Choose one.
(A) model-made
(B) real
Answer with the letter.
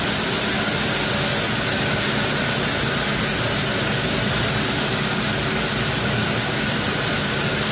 B